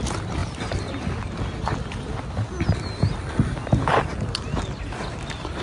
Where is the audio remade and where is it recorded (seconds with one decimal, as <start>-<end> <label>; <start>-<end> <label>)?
0.0-5.6 recorded